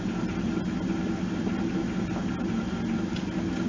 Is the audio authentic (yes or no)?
yes